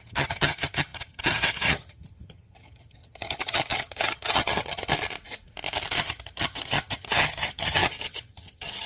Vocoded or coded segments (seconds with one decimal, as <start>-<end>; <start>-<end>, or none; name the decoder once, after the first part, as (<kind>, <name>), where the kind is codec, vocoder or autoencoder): 0.0-4.9 (vocoder, HiFi-GAN); 6.0-8.9